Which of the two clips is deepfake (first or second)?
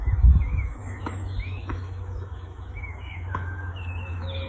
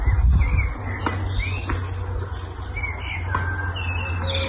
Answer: first